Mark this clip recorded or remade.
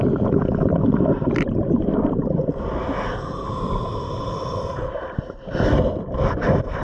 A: remade